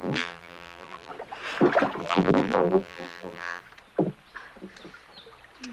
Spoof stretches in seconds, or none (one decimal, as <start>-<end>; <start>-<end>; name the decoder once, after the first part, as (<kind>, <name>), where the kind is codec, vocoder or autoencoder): 0.0-1.1 (vocoder, BigVGAN v2); 2.0-3.6